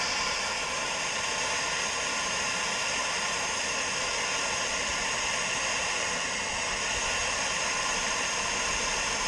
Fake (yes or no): no